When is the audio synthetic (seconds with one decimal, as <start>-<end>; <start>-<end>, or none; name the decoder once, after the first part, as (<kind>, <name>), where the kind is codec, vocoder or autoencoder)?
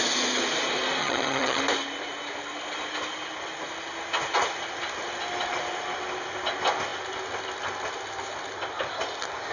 1.0-1.6 (vocoder, HiFi-GAN)